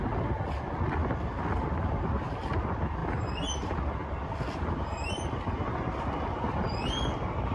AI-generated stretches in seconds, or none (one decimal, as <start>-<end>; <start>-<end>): none